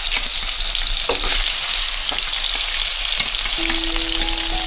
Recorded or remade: recorded